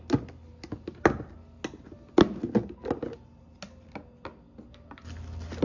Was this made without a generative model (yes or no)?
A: yes